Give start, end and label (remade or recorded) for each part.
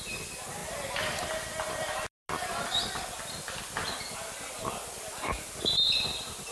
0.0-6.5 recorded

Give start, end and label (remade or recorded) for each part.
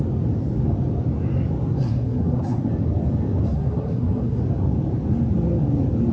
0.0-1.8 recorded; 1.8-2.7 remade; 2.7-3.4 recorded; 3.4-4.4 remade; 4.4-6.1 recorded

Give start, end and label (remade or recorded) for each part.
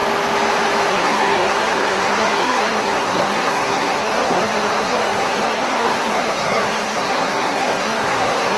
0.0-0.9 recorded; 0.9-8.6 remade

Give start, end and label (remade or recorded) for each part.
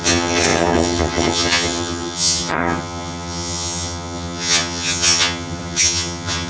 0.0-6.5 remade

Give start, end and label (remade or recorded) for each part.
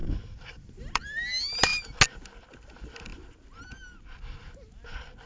0.0-5.3 recorded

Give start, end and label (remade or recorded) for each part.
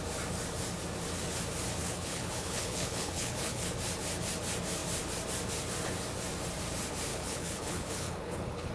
0.0-1.8 recorded; 1.8-3.7 remade; 3.7-7.1 recorded; 7.1-8.7 remade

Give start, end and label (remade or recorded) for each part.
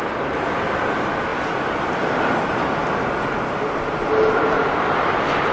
0.0-5.5 recorded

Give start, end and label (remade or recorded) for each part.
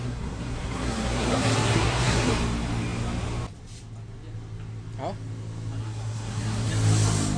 0.0-2.3 remade; 2.3-5.8 recorded; 5.8-6.7 remade; 6.7-7.4 recorded